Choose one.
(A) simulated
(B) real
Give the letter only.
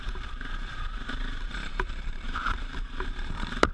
A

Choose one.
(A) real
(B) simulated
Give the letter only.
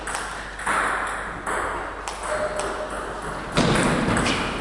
A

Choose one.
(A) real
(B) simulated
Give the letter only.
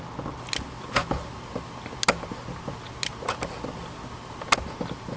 A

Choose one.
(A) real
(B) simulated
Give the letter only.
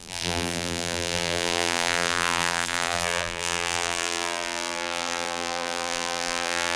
B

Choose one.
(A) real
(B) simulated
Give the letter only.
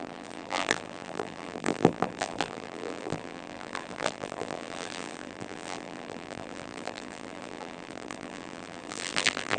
B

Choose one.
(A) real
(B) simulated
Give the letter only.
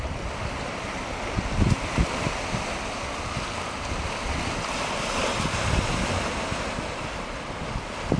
A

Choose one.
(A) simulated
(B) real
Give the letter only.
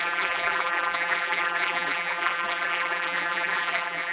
A